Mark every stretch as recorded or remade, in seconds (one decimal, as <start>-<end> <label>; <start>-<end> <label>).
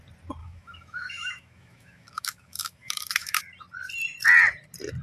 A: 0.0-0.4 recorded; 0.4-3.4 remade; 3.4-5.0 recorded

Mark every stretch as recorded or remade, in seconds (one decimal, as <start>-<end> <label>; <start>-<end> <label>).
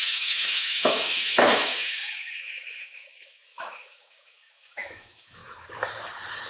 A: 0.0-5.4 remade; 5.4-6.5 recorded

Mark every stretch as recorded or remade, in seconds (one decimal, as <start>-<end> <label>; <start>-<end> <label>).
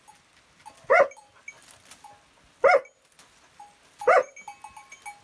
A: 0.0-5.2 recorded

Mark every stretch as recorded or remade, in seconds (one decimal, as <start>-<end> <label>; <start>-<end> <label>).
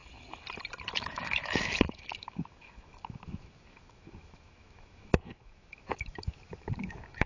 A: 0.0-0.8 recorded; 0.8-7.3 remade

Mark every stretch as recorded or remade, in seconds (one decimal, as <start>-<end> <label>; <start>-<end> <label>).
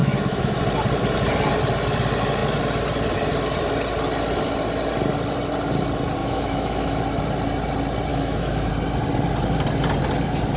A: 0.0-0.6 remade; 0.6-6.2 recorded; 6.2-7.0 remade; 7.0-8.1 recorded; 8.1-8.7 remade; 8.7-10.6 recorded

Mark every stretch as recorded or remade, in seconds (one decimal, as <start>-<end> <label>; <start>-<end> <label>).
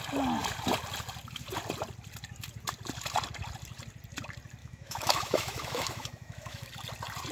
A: 0.0-4.6 recorded; 4.6-6.7 remade; 6.7-7.3 recorded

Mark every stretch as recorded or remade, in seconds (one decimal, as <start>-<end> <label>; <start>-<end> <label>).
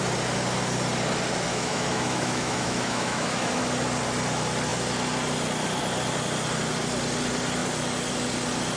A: 0.0-1.5 recorded; 1.5-3.6 remade; 3.6-8.8 recorded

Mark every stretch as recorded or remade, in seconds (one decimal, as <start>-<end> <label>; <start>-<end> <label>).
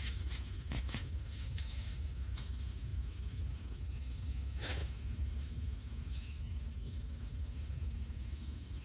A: 0.0-8.8 remade